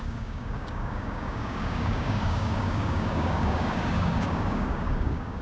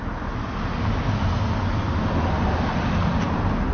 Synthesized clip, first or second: first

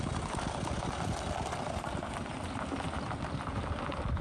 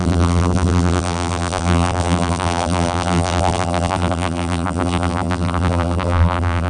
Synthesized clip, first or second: second